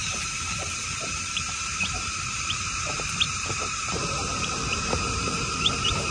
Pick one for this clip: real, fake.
fake